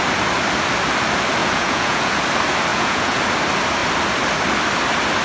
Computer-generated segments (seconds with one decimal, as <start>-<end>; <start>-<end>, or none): 1.4-2.1; 2.7-3.2